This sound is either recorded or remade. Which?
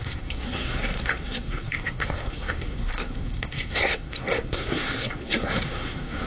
remade